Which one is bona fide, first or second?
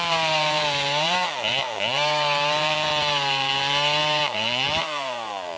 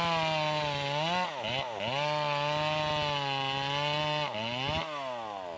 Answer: second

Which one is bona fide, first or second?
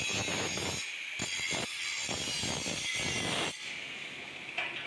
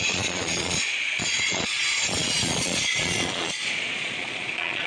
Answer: first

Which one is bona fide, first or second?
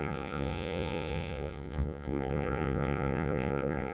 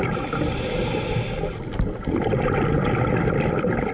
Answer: second